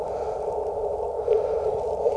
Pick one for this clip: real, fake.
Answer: real